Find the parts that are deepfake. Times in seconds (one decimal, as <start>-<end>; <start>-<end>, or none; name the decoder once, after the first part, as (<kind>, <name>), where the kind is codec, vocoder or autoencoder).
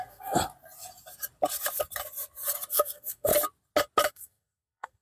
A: 0.0-0.4 (codec, SNAC); 2.7-3.3; 4.1-5.0